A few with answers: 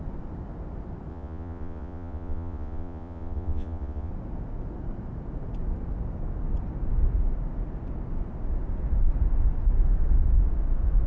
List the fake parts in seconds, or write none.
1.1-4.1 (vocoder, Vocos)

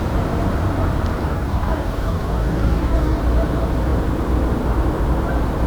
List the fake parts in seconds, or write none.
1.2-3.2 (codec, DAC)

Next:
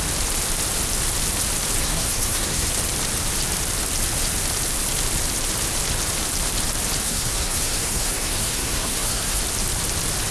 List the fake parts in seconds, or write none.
1.8-2.7 (codec, SNAC); 7.0-9.4

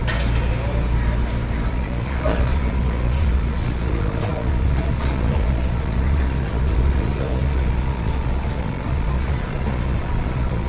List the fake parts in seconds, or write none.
1.7-10.7 (vocoder, Vocos)

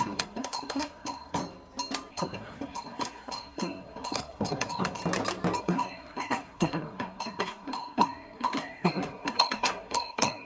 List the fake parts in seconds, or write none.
0.0-1.4 (codec, SNAC); 2.1-5.0; 5.6-10.4